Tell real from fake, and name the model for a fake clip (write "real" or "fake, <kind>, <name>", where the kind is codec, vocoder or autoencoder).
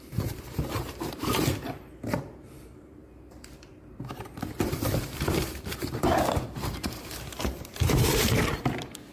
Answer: fake, vocoder, BigVGAN v2